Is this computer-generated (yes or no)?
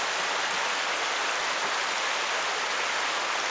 no